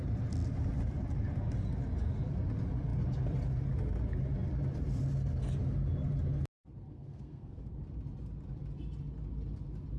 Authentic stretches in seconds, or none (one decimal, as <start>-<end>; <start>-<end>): 0.0-6.9; 7.7-10.0